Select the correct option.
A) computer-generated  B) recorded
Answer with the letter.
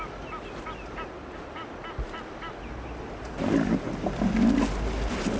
B